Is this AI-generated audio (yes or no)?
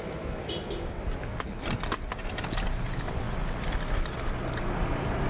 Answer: no